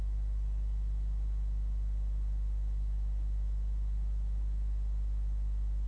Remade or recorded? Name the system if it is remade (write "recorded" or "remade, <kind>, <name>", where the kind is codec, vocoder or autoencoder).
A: recorded